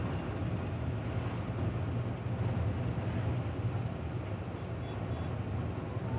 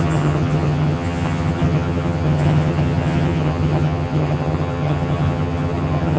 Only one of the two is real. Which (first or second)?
first